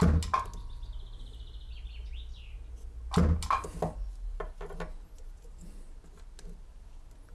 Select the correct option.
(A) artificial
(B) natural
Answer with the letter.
B